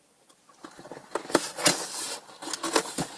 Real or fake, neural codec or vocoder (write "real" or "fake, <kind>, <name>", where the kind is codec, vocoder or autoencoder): real